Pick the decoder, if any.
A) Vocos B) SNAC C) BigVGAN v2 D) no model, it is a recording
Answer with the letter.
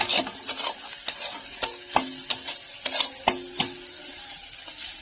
D